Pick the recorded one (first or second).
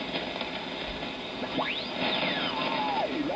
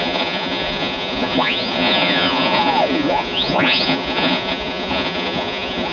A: first